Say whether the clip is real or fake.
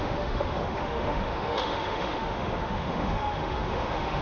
fake